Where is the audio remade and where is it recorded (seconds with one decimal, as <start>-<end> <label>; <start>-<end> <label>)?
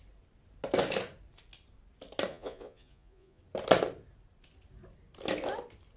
0.0-2.3 recorded; 2.3-3.4 remade; 3.4-6.0 recorded